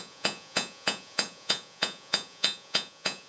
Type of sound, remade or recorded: remade